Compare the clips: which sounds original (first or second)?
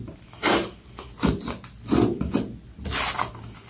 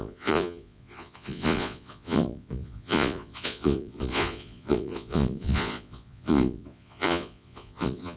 first